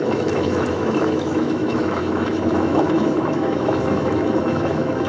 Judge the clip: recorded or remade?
remade